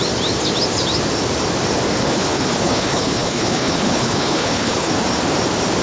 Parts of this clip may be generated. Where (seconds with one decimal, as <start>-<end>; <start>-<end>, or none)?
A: 2.0-4.9

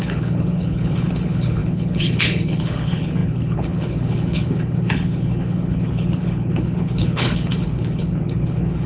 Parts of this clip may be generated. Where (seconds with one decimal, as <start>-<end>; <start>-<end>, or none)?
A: 0.0-8.9

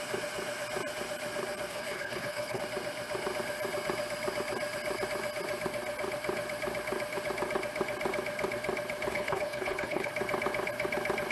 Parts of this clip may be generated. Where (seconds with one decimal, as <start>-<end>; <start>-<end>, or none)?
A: 1.7-2.6; 9.1-10.1

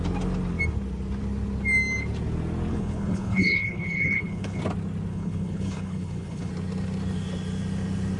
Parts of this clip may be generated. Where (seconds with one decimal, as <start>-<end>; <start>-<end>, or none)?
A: 2.7-4.6; 5.1-6.5